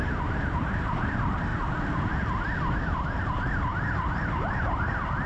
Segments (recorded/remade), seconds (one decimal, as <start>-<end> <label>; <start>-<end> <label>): 0.0-1.5 remade; 1.5-2.7 recorded; 2.7-5.3 remade